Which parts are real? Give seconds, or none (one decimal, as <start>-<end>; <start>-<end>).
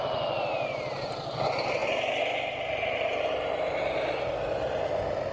0.0-5.3